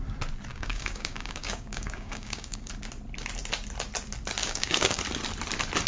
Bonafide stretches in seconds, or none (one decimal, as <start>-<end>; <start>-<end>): 0.0-0.5; 2.7-4.4; 5.0-5.9